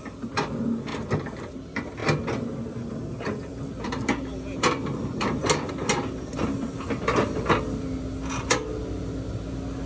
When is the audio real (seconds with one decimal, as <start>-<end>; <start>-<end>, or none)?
0.0-9.9